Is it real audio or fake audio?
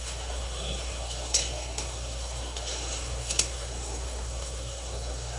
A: fake